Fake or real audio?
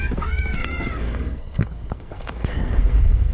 fake